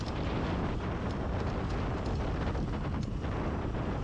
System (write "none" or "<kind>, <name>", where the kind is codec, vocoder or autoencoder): none